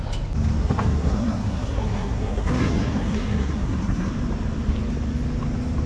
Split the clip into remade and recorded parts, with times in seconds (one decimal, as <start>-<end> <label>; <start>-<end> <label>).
0.0-0.6 recorded; 0.6-4.1 remade; 4.1-5.9 recorded